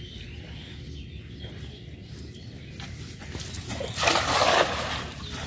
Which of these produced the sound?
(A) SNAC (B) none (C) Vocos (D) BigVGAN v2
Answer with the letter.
B